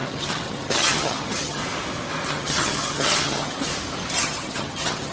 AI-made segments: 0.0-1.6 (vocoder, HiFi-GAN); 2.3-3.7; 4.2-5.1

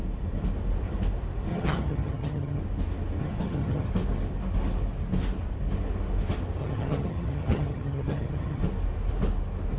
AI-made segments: 1.5-2.6 (vocoder, HiFi-GAN); 3.2-3.9; 6.6-8.6